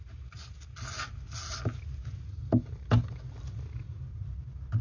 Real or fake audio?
real